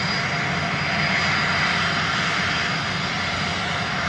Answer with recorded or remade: recorded